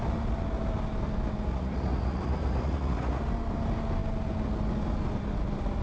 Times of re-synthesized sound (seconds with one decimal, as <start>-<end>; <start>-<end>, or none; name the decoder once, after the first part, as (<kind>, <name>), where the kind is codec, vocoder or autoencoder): 1.5-3.2 (vocoder, Vocos)